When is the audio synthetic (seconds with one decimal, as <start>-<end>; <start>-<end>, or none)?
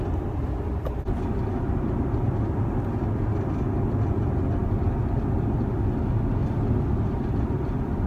none